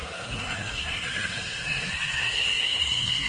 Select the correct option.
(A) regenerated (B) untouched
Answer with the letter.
A